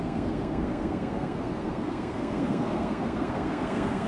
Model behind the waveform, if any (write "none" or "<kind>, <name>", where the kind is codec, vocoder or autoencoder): codec, SNAC